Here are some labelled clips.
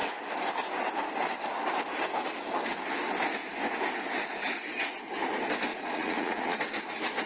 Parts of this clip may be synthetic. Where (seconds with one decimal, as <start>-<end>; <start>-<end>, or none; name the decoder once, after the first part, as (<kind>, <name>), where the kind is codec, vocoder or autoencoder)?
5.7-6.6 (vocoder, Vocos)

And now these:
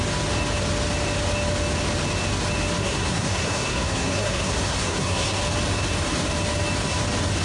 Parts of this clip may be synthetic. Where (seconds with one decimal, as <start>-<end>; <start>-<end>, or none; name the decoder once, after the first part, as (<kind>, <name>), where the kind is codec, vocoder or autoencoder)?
2.8-5.4 (codec, SNAC)

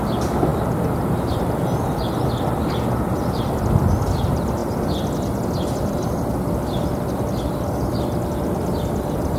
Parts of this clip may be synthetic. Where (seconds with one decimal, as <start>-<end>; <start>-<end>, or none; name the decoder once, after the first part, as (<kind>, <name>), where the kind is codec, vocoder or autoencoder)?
none

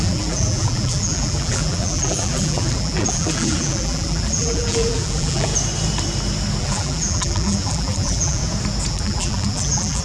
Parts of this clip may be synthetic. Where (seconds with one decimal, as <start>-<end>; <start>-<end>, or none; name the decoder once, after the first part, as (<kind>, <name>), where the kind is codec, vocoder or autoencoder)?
0.0-5.5 (vocoder, BigVGAN v2); 6.6-8.4; 8.9-10.0

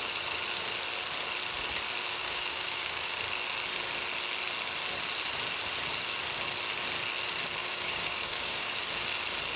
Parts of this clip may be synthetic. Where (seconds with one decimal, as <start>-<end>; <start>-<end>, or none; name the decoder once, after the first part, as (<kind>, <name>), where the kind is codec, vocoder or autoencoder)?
2.2-3.1 (codec, DAC); 7.6-8.8

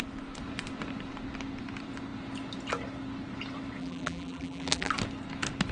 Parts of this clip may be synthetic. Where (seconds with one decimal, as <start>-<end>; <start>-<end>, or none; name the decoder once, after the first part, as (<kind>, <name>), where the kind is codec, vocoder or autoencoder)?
3.8-4.9 (vocoder, BigVGAN v2)